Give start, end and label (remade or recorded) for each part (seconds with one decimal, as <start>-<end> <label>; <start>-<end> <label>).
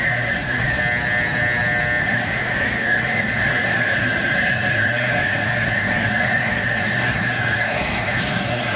0.0-0.8 remade; 0.8-2.0 recorded; 2.0-8.8 remade